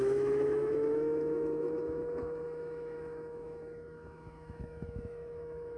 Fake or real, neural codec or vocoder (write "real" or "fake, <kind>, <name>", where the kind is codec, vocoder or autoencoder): fake, autoencoder, DAC-VAE